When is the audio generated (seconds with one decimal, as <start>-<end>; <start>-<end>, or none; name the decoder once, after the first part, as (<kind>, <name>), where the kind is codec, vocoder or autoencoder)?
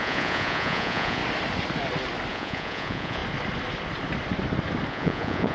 0.0-1.2 (vocoder, Vocos); 2.3-3.2; 4.9-5.5